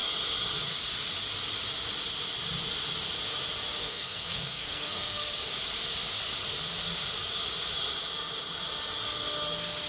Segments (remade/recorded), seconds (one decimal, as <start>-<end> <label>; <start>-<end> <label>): 0.0-3.8 recorded; 3.8-5.3 remade; 5.3-9.9 recorded